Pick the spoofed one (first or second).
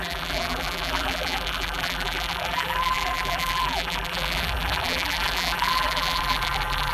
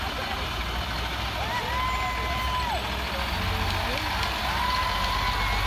first